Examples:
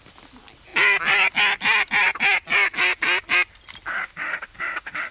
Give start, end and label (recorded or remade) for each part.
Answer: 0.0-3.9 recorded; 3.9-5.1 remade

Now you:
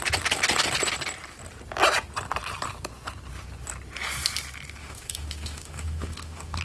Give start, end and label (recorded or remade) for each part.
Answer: 0.0-4.8 recorded; 4.8-6.6 remade

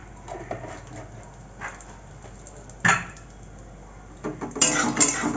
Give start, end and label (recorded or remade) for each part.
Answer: 0.0-5.4 recorded

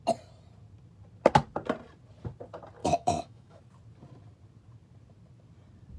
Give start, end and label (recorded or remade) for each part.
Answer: 0.0-2.8 recorded; 2.8-3.6 remade; 3.6-6.0 recorded